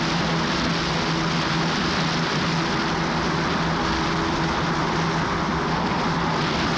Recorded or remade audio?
recorded